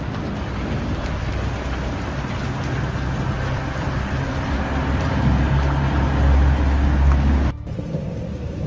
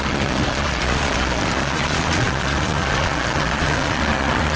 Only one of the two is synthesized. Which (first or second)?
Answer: second